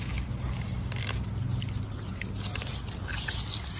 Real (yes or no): yes